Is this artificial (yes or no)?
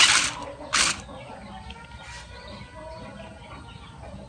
no